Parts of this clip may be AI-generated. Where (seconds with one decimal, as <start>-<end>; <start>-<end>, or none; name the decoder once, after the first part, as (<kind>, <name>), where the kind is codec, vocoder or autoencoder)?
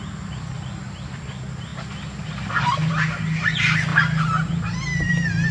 none